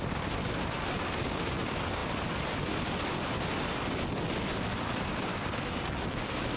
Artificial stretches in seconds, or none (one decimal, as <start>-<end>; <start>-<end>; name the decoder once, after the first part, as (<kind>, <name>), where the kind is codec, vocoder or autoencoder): 5.3-6.6 (codec, DAC)